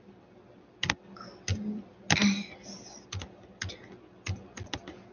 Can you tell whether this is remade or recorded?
recorded